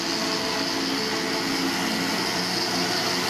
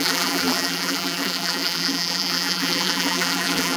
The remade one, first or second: second